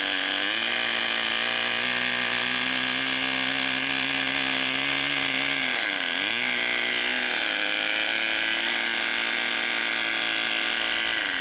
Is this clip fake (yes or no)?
no